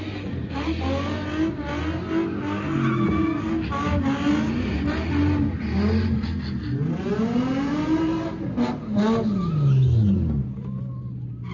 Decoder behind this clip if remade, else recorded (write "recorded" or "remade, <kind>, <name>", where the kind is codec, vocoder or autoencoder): recorded